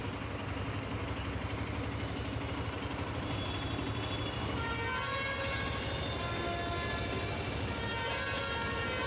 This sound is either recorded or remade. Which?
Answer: recorded